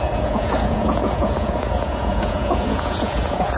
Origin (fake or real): fake